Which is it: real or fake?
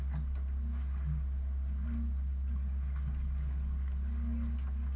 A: real